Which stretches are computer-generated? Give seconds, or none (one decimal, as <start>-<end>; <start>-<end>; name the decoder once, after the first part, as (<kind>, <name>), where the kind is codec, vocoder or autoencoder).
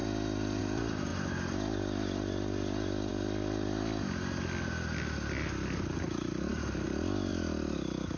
none